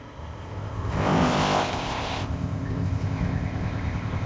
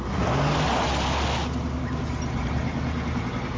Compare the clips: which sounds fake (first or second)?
first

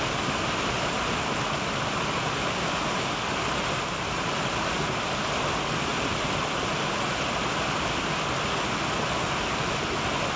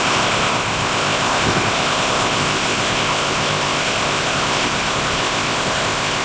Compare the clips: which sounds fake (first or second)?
second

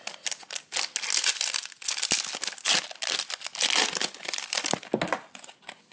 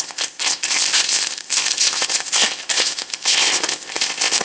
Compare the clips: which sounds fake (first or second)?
second